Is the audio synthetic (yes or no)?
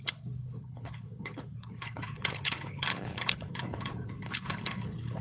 yes